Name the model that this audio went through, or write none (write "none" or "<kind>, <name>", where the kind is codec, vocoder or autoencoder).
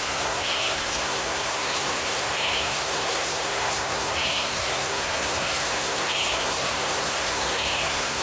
codec, SNAC